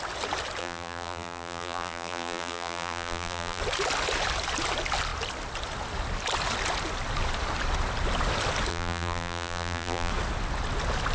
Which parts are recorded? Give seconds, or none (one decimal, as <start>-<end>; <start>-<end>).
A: 0.0-0.6; 3.6-8.7; 10.1-11.1